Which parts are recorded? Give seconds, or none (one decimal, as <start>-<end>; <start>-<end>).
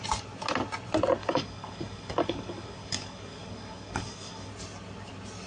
0.0-1.2; 4.5-5.5